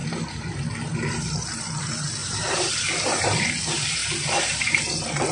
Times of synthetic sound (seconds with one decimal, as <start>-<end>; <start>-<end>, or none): 2.2-3.4; 4.0-4.8